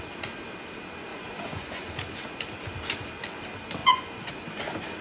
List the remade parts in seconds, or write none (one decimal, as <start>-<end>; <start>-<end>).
1.1-1.9; 3.8-4.3